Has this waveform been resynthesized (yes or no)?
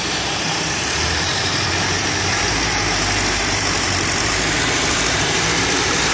yes